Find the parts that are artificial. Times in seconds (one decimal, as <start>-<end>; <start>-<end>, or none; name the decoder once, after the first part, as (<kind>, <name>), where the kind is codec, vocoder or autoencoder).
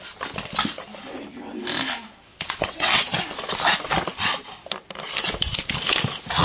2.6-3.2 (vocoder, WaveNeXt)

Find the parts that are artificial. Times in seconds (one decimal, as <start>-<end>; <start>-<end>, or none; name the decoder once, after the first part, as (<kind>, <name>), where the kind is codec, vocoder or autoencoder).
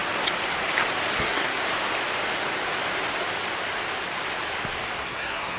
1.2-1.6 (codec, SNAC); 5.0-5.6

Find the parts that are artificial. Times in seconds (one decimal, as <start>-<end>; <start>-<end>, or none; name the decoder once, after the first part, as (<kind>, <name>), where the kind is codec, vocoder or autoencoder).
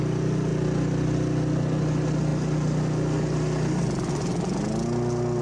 none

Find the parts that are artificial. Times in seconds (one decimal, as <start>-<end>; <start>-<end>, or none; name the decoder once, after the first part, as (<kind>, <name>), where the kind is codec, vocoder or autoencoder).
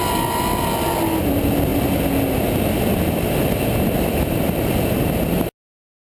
none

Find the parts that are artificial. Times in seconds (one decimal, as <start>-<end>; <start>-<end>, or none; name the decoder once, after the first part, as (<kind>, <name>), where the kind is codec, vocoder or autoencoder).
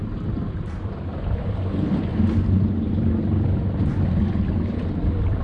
none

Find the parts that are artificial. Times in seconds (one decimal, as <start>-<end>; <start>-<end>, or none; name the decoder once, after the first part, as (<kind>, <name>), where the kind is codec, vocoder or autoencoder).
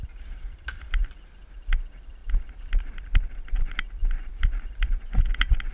none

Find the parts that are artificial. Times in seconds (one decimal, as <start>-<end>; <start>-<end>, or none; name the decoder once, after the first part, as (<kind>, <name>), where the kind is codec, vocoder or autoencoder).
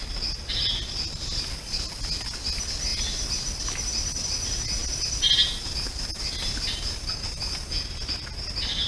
none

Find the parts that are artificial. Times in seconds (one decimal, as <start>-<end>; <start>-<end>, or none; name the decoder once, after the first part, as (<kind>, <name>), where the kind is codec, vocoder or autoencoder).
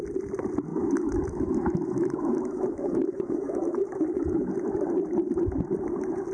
0.7-4.5 (autoencoder, DAC-VAE)